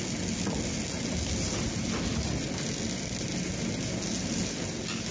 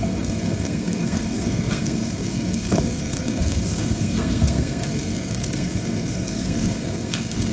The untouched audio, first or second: first